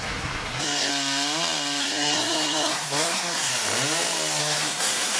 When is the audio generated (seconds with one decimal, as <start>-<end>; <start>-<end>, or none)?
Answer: 0.0-0.9; 1.8-3.5; 4.4-5.2